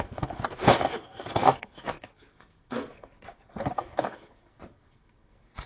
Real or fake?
fake